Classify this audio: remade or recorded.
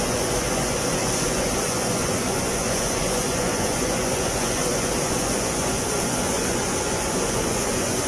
remade